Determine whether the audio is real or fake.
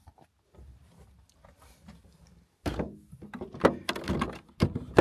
real